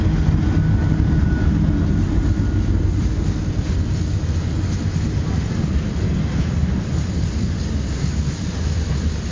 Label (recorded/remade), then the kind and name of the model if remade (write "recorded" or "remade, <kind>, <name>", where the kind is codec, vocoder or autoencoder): recorded